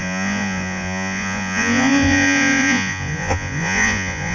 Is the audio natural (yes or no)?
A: no